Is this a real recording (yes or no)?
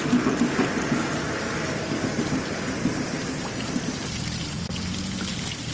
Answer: yes